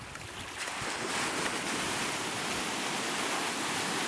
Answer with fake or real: real